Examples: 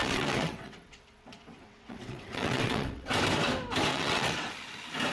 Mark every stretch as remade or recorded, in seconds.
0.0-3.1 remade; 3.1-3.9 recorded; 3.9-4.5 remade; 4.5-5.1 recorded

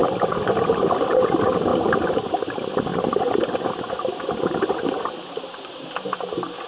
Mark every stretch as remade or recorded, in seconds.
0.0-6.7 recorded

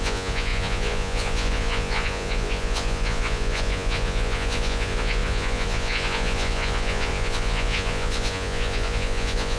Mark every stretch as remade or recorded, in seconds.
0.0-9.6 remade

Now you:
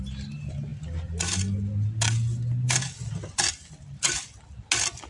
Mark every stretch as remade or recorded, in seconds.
0.0-5.1 recorded

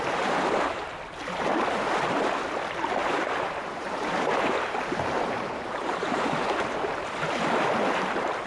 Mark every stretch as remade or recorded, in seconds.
0.0-3.0 recorded; 3.0-6.9 remade; 6.9-8.5 recorded

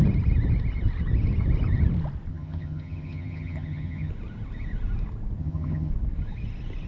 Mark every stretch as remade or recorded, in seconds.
0.0-2.3 recorded; 2.3-4.1 remade; 4.1-5.4 recorded; 5.4-5.9 remade; 5.9-6.9 recorded

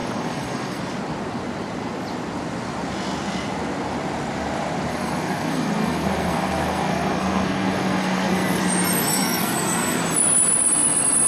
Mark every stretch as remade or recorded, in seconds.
0.0-0.8 remade; 0.8-4.9 recorded; 4.9-8.6 remade; 8.6-9.1 recorded; 9.1-10.0 remade; 10.0-11.3 recorded

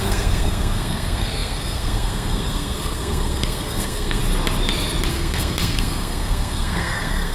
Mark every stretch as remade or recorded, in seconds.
0.0-4.2 remade; 4.2-5.1 recorded; 5.1-7.3 remade